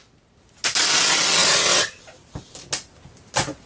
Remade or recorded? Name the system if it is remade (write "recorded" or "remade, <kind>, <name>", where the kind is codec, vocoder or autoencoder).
recorded